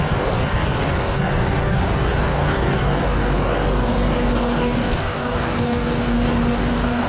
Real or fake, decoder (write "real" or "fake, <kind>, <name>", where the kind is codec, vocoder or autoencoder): fake, codec, DAC